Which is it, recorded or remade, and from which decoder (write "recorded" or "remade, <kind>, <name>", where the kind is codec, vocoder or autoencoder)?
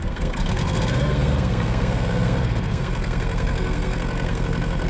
remade, codec, SNAC